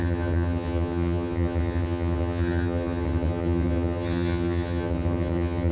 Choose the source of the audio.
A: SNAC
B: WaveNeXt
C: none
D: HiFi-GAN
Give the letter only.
D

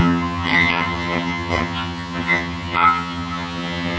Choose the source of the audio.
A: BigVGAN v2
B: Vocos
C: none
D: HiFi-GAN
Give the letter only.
D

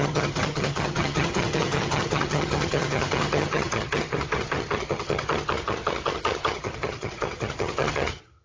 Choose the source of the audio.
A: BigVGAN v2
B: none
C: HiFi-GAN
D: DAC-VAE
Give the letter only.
C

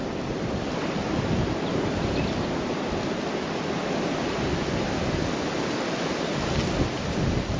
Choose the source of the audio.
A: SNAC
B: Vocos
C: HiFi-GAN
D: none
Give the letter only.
D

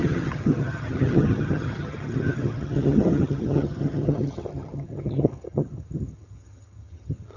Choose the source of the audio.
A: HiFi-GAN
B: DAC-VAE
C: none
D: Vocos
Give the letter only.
A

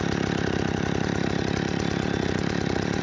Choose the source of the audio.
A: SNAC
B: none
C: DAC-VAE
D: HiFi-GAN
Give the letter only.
B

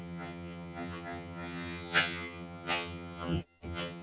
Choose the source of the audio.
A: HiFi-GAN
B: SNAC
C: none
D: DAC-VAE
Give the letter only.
A